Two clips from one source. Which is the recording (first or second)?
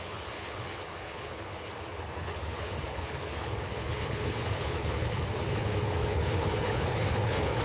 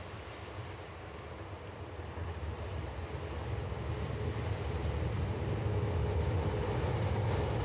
second